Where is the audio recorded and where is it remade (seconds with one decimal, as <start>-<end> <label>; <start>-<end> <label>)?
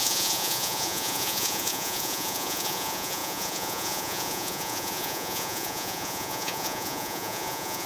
0.0-7.9 remade